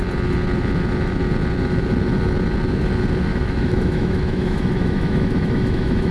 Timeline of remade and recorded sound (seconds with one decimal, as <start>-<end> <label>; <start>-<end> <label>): 0.0-3.3 recorded; 3.3-6.1 remade